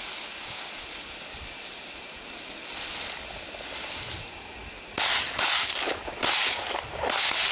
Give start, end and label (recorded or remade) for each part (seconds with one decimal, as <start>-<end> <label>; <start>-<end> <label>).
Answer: 0.0-7.5 recorded